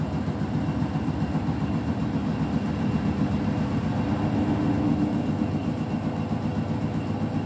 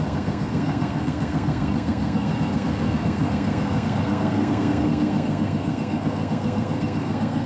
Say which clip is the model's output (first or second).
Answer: second